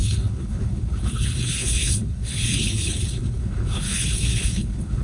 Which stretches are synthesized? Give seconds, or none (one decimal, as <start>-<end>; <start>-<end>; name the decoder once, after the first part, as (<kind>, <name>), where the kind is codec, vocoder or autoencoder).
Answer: 0.0-5.0 (codec, HILCodec)